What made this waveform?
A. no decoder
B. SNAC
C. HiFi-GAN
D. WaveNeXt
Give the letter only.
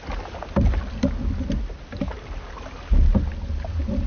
A